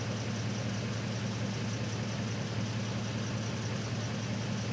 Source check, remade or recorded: recorded